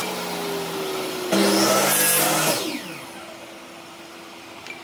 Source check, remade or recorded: recorded